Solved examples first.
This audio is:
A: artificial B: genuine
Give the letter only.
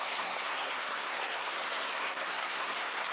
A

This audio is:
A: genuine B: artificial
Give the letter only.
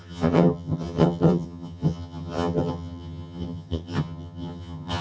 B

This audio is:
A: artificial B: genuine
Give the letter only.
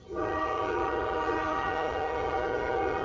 A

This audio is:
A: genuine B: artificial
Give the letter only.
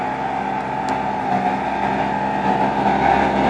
A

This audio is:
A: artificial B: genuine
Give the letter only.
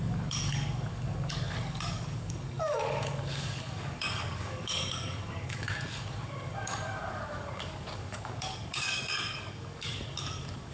A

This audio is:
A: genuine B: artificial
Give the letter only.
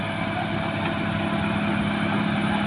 A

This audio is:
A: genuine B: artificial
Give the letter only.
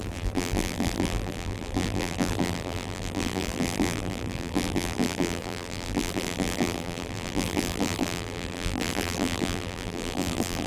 B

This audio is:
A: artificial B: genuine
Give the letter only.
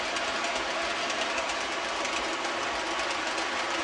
B